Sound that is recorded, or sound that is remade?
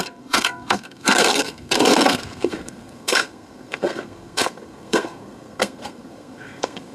remade